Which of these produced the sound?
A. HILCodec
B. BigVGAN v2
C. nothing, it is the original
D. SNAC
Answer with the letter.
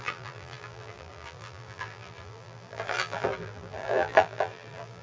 B